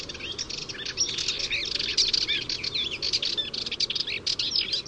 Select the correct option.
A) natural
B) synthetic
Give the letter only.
A